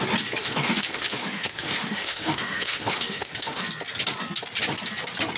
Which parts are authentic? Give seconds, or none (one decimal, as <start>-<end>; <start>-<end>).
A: 0.0-0.4; 3.6-5.4